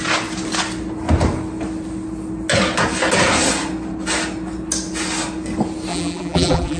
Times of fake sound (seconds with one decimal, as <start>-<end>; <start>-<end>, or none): 5.9-6.8